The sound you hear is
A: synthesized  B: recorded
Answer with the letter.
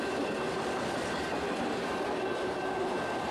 B